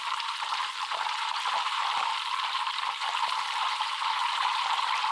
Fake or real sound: fake